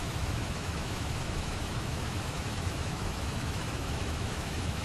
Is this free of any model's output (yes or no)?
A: no